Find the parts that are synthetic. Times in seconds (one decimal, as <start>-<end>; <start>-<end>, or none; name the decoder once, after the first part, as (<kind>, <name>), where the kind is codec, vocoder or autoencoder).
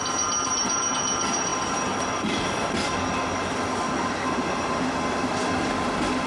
none